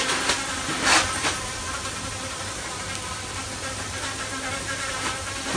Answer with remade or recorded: recorded